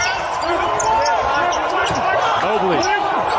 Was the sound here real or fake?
real